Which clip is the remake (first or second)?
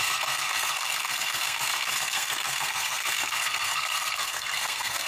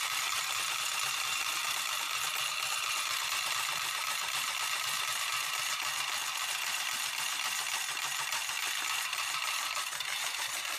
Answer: first